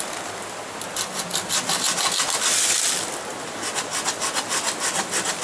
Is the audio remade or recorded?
recorded